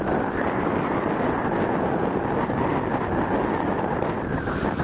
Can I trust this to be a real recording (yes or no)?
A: yes